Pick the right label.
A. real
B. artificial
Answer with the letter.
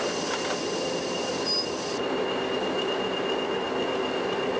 A